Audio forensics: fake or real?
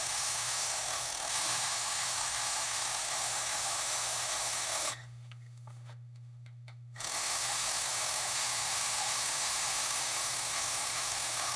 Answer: fake